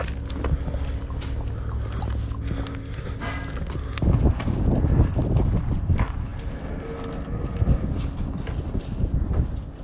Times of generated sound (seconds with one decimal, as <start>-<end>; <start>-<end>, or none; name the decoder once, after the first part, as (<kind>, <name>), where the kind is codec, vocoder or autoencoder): none